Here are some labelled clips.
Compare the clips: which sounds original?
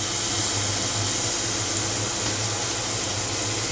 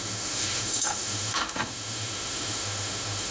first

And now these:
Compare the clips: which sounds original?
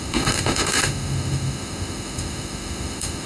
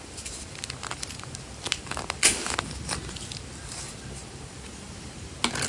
second